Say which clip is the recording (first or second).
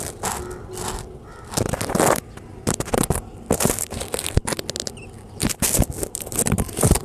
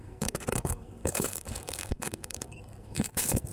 first